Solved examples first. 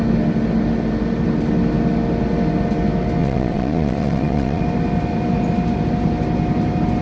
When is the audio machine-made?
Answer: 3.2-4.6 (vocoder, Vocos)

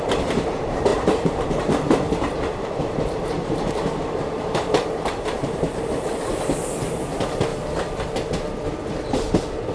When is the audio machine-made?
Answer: 0.9-5.9 (vocoder, BigVGAN v2)

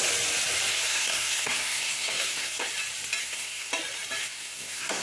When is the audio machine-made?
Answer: 0.7-2.7 (codec, SNAC); 3.2-3.7; 4.2-5.0